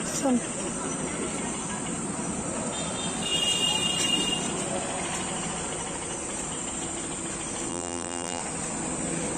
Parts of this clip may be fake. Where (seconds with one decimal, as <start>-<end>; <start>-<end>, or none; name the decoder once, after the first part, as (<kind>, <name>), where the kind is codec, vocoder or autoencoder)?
7.7-8.4 (vocoder, BigVGAN v2)